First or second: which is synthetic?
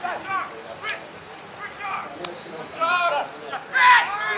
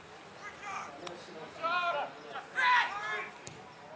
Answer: first